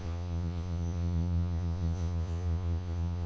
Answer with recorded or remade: remade